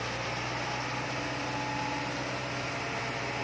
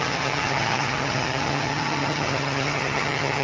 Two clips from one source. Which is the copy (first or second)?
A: second